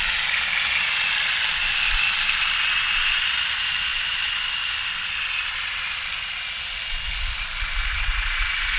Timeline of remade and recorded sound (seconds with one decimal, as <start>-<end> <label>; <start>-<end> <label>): 0.0-8.8 recorded